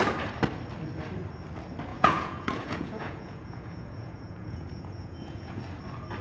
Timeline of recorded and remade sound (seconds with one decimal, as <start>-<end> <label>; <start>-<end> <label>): 0.0-1.9 recorded; 1.9-5.6 remade; 5.6-6.2 recorded